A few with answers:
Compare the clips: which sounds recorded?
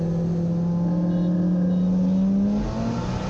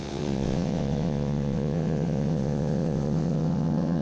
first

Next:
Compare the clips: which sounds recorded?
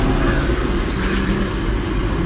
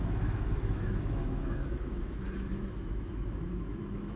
first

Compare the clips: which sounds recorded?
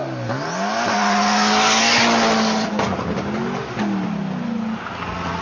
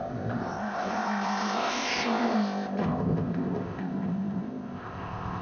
first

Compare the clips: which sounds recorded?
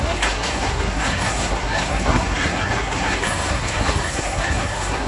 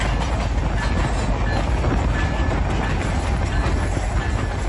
second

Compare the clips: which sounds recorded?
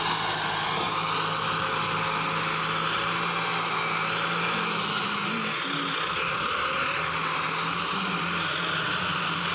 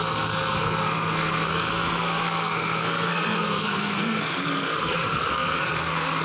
first